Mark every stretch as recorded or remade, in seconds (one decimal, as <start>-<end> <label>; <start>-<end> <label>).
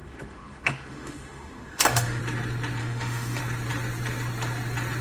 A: 0.0-2.2 remade; 2.2-2.8 recorded; 2.8-3.4 remade; 3.4-5.0 recorded